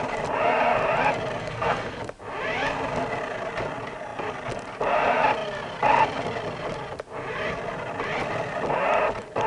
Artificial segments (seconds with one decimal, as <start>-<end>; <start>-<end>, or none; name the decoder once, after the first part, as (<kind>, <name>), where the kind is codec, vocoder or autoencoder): 1.4-2.0 (codec, SNAC)